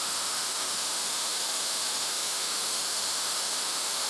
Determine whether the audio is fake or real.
fake